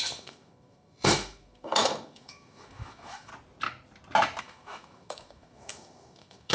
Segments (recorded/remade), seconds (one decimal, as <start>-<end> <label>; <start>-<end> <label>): 0.0-3.3 remade; 3.3-4.4 recorded; 4.4-6.5 remade